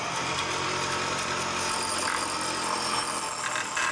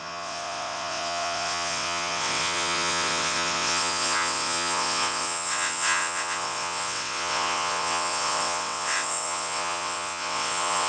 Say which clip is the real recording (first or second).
first